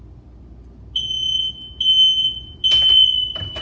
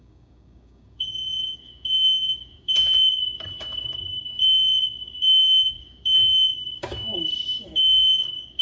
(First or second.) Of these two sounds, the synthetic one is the second